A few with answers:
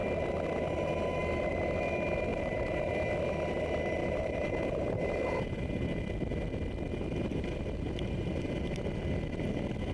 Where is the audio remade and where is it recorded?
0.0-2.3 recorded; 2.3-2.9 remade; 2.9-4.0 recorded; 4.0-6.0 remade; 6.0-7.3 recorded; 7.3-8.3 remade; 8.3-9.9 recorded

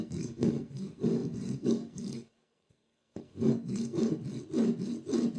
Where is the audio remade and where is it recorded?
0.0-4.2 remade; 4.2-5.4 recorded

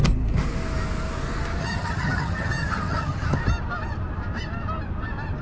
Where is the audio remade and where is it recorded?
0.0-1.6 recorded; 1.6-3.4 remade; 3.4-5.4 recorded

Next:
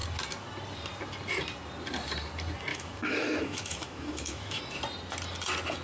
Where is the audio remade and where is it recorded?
0.0-2.7 recorded; 2.7-4.6 remade; 4.6-5.8 recorded

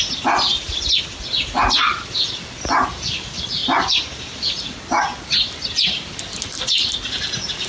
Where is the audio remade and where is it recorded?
0.0-3.6 recorded; 3.6-5.0 remade; 5.0-7.7 recorded

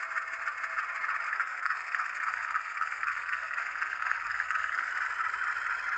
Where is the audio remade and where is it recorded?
0.0-1.3 recorded; 1.3-4.9 remade; 4.9-6.0 recorded